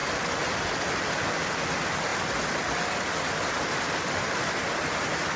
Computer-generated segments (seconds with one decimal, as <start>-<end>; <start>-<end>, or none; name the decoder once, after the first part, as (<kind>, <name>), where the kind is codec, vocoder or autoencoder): none